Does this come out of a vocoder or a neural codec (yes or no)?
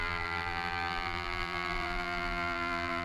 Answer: yes